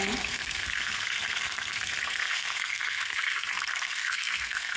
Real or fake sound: fake